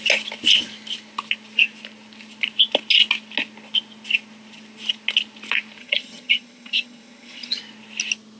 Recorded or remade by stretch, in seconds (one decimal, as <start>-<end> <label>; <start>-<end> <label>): 0.0-5.8 recorded; 5.8-7.6 remade; 7.6-8.4 recorded